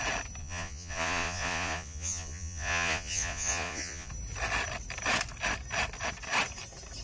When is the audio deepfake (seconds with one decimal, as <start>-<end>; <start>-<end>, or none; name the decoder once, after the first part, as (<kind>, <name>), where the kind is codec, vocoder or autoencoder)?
0.4-4.1 (vocoder, Vocos)